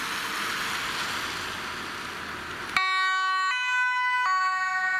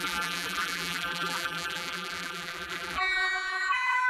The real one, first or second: first